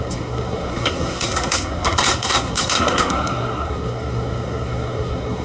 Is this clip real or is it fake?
fake